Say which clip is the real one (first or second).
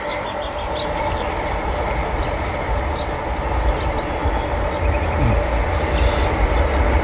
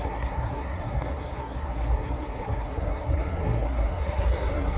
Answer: first